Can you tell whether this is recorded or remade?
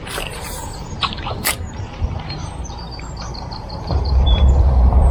remade